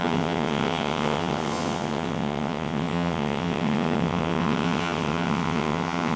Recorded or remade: remade